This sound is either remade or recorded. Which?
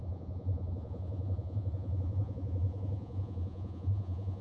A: remade